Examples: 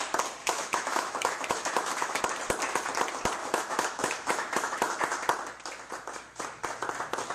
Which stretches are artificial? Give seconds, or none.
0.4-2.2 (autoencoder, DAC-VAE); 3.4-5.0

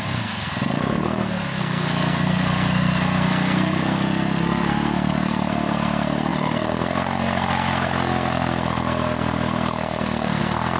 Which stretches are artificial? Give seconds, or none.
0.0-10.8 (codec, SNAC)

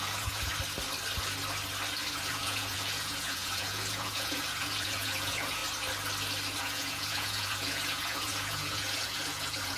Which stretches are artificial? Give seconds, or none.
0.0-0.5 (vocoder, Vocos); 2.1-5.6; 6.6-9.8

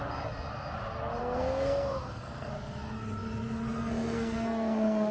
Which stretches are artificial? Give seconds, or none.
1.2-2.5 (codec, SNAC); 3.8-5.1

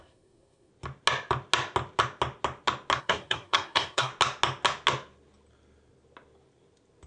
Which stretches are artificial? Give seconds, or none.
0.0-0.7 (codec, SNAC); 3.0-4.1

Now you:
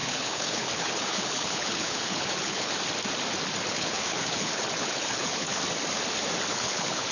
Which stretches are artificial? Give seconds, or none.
0.0-2.7 (codec, HILCodec); 3.7-5.6; 6.5-7.1

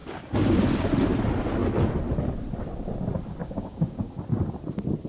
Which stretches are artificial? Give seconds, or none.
0.0-0.6 (codec, DAC); 3.4-4.1

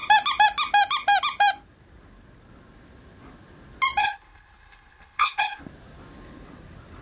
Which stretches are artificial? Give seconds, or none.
4.0-5.6 (codec, HILCodec)